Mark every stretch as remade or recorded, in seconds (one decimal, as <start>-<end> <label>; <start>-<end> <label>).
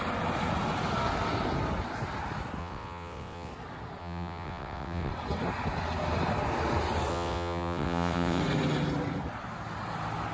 0.0-2.6 recorded; 2.6-3.5 remade; 3.5-4.0 recorded; 4.0-5.1 remade; 5.1-7.1 recorded; 7.1-8.4 remade; 8.4-10.3 recorded